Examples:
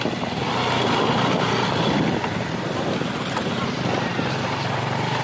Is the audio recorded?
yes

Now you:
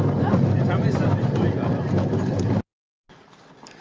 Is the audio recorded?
yes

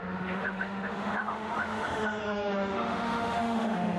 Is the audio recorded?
no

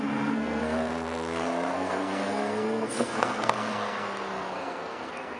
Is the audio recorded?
no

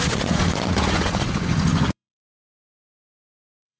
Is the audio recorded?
no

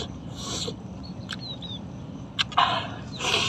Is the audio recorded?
yes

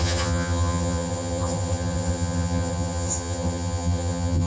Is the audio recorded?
no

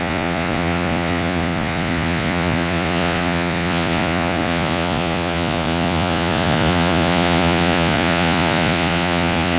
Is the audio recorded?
no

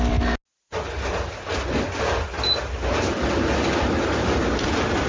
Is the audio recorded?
yes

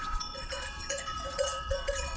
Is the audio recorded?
no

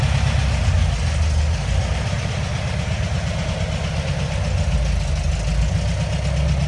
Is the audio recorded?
yes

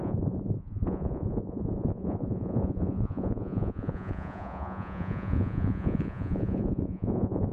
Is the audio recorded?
no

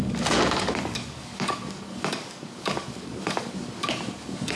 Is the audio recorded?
no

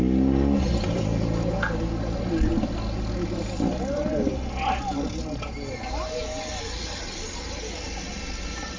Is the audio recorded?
yes